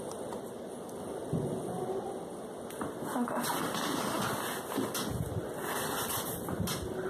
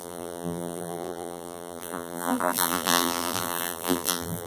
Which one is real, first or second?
first